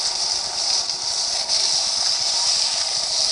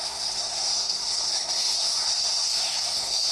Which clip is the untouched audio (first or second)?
first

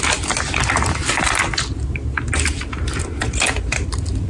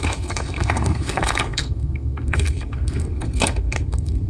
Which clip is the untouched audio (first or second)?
first